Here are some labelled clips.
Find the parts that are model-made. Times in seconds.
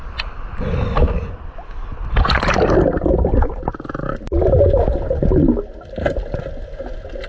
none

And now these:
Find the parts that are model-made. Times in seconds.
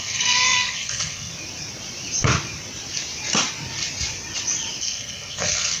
0.0-1.3 (codec, SNAC); 4.8-5.8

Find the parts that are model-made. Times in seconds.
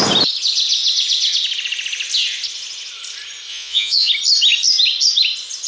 3.5-4.1 (vocoder, Vocos)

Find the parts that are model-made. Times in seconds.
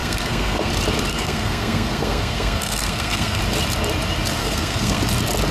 0.0-0.7 (codec, SNAC); 1.1-3.4; 4.4-5.0